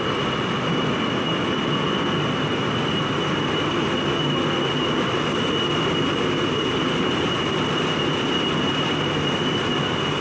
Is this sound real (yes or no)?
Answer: yes